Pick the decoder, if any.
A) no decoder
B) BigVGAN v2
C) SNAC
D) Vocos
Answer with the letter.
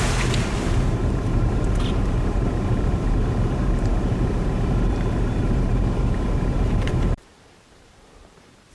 B